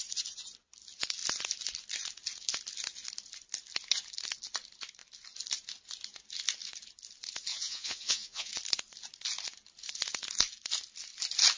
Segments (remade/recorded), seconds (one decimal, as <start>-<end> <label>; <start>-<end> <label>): 0.0-7.5 recorded; 7.5-8.5 remade; 8.5-11.6 recorded